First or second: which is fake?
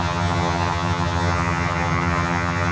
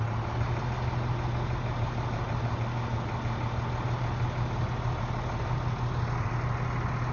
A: first